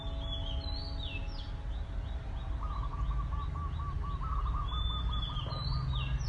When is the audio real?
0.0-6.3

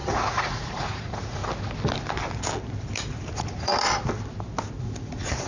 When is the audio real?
1.4-3.3; 3.7-4.8

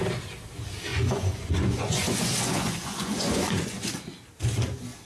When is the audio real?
0.0-0.9; 3.9-5.0

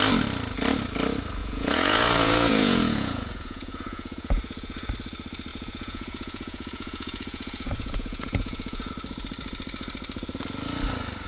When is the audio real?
0.0-1.4; 4.9-5.5; 8.9-11.3

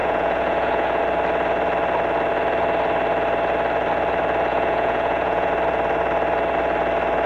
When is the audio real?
1.0-4.5; 5.5-7.3